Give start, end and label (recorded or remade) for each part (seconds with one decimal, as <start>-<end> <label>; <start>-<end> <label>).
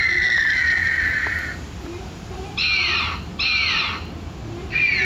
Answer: 0.0-5.0 recorded